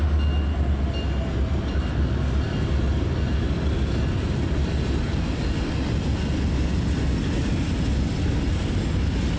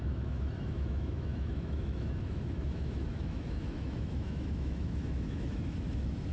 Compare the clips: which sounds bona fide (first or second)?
first